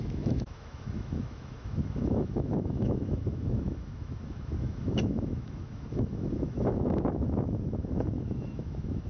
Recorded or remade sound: remade